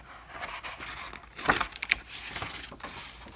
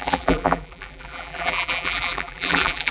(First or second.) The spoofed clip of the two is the second